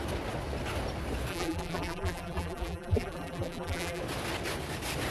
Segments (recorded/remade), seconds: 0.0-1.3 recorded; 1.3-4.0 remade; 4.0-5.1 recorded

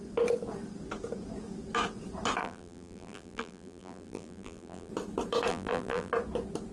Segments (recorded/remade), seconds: 0.0-2.4 recorded; 2.4-4.9 remade; 4.9-5.5 recorded; 5.5-6.1 remade; 6.1-6.7 recorded

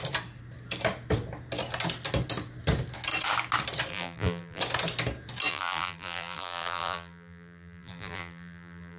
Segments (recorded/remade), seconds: 0.0-3.9 recorded; 3.9-4.6 remade; 4.6-5.5 recorded; 5.5-9.0 remade

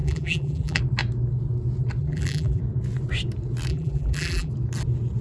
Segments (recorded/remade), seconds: 0.0-0.8 remade; 0.8-2.0 recorded; 2.0-2.6 remade; 2.6-3.7 recorded; 3.7-4.5 remade; 4.5-5.2 recorded

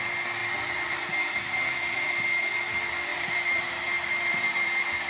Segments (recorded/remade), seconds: 0.0-0.4 recorded; 0.4-2.2 remade; 2.2-3.1 recorded; 3.1-3.6 remade; 3.6-4.3 recorded; 4.3-5.1 remade